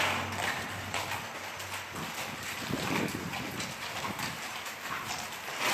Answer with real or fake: fake